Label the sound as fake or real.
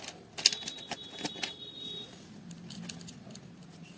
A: real